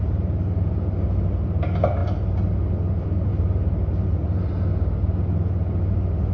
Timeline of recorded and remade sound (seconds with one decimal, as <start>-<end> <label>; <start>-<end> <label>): 0.0-6.3 recorded